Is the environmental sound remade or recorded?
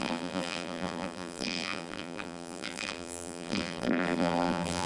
remade